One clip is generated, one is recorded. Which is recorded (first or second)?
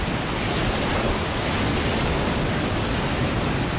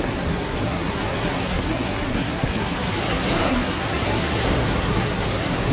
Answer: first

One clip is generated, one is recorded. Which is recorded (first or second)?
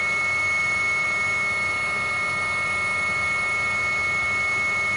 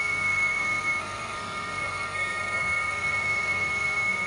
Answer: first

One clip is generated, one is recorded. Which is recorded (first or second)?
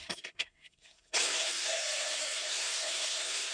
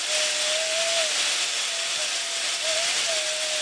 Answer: second